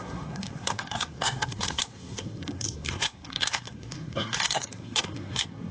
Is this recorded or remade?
remade